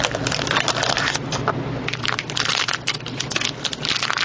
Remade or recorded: recorded